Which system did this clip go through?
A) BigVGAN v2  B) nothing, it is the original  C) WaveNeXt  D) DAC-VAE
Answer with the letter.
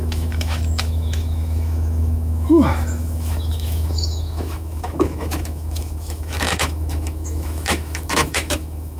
D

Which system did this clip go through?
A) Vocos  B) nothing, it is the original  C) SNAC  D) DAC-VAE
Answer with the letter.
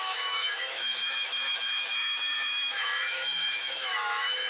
D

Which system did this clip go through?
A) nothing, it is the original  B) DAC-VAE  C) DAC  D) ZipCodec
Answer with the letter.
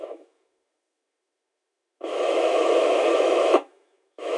B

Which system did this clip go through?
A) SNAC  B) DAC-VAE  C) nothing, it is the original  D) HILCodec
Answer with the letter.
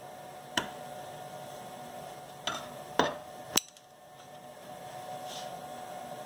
C